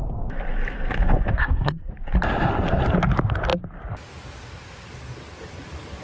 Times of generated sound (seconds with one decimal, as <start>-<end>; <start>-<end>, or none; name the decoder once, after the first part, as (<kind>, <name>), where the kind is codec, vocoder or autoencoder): 1.4-1.9 (codec, SNAC)

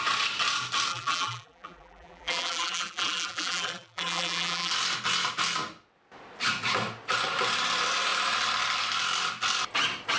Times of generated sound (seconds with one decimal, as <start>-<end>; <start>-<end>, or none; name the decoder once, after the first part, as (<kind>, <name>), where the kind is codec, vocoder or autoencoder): 0.9-4.7 (vocoder, BigVGAN v2)

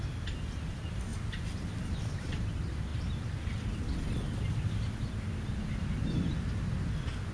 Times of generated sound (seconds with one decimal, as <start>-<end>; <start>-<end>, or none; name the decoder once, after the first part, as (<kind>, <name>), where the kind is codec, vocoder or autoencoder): none

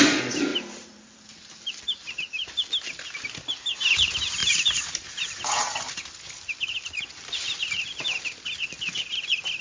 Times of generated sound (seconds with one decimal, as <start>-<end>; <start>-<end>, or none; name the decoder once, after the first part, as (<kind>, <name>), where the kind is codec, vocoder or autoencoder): 0.5-3.2 (vocoder, BigVGAN v2); 4.4-5.1

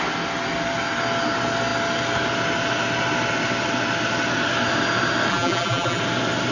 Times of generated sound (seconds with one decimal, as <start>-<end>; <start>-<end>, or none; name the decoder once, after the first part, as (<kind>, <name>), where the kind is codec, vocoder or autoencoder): 5.3-6.0 (vocoder, BigVGAN v2)

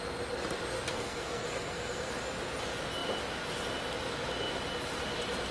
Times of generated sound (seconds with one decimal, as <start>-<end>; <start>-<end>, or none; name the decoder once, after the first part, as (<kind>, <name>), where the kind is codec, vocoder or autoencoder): 0.9-2.1 (codec, SNAC)